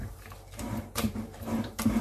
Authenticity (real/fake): fake